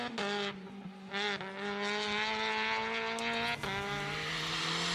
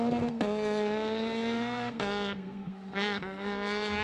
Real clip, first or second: first